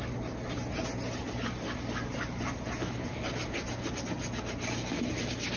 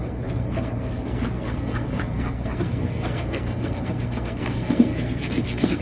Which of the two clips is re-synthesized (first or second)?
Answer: second